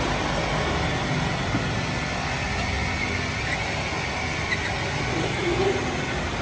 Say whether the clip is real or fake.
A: real